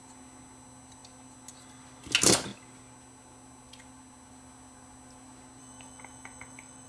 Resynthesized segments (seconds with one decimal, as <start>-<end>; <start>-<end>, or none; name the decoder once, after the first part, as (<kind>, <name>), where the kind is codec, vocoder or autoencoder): 5.6-6.9 (autoencoder, DAC-VAE)